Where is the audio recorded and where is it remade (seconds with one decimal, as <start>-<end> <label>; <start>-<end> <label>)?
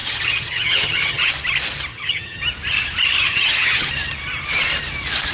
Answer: 0.0-1.3 remade; 1.3-1.9 recorded; 1.9-2.4 remade; 2.4-3.3 recorded; 3.3-3.9 remade; 3.9-5.3 recorded